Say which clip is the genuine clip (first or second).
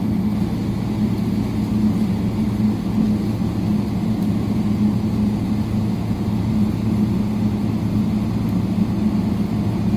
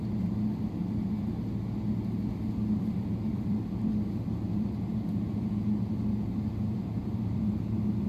first